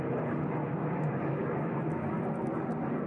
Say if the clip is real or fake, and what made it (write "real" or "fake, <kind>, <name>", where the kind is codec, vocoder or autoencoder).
real